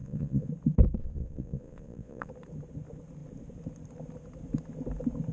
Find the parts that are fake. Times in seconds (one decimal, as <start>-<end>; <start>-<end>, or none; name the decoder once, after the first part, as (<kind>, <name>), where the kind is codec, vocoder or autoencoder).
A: 0.0-0.5 (vocoder, Vocos); 1.0-2.3